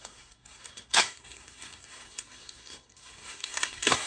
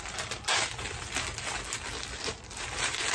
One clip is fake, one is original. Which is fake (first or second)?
first